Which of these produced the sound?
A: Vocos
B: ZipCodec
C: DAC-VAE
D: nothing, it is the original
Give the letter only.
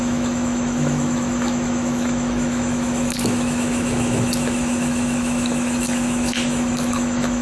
C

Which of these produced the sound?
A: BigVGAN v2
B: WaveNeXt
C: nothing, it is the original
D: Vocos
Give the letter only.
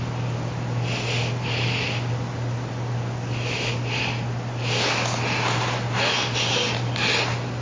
C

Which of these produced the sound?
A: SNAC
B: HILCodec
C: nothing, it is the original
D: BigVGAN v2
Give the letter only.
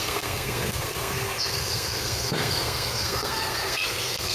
A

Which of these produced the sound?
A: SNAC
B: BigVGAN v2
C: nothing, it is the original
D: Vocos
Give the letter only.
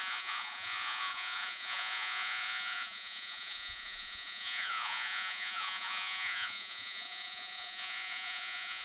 D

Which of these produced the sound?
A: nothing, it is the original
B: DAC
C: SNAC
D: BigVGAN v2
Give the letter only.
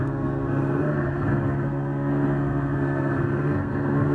C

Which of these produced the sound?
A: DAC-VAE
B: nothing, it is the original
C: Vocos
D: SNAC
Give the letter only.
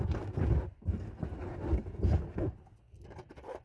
B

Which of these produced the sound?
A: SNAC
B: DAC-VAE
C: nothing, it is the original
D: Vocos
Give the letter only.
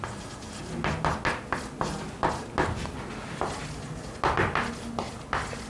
C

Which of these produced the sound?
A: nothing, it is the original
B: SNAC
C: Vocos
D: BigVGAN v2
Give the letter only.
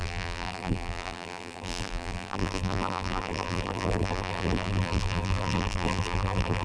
D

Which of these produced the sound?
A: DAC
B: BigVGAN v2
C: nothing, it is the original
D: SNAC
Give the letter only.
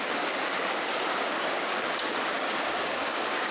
A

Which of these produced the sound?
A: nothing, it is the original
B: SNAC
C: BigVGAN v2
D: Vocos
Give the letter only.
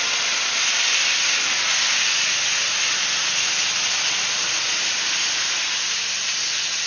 A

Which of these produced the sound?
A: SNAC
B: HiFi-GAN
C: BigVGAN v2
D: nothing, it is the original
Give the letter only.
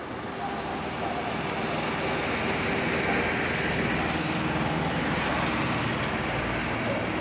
D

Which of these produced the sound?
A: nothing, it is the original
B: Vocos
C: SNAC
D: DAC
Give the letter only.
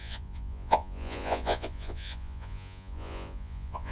B